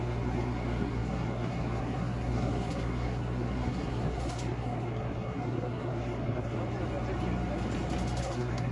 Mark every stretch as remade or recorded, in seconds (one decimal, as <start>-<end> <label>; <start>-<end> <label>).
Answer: 0.0-6.6 remade; 6.6-8.2 recorded; 8.2-8.7 remade